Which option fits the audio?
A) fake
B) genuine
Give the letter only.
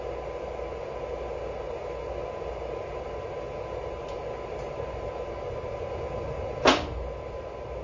B